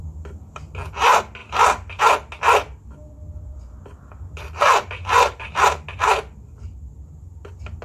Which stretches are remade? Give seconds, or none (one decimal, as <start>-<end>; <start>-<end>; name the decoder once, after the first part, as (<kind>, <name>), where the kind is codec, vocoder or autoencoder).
none